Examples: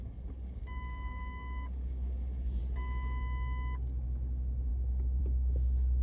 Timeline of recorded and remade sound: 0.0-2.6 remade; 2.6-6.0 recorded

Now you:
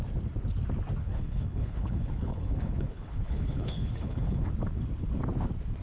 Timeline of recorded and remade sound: 0.0-1.0 recorded; 1.0-4.5 remade; 4.5-5.8 recorded

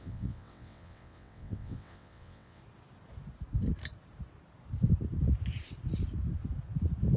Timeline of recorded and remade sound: 0.0-2.6 remade; 2.6-7.2 recorded

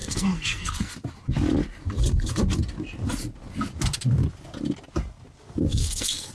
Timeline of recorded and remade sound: 0.0-0.9 remade; 0.9-5.7 recorded; 5.7-6.3 remade

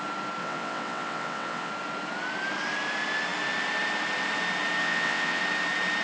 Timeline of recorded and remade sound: 0.0-0.4 recorded; 0.4-1.7 remade; 1.7-4.8 recorded; 4.8-5.4 remade; 5.4-6.0 recorded

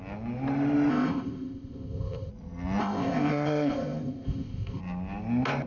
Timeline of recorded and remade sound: 0.0-0.9 recorded; 0.9-2.3 remade; 2.3-2.8 recorded; 2.8-4.8 remade; 4.8-5.7 recorded

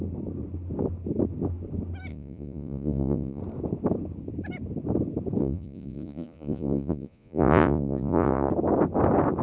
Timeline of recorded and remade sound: 0.0-2.1 recorded; 2.1-3.4 remade; 3.4-5.4 recorded; 5.4-8.5 remade; 8.5-9.4 recorded